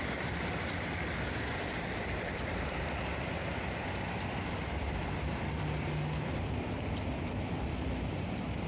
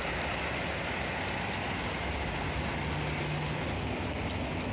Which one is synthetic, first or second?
first